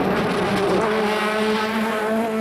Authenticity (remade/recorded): recorded